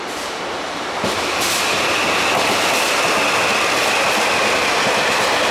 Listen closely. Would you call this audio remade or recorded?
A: recorded